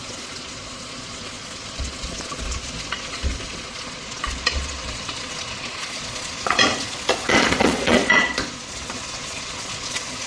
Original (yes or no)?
no